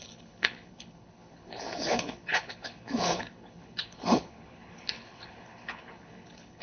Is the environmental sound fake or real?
fake